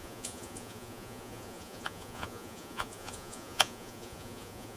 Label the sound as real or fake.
fake